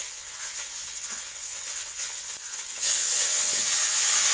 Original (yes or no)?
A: no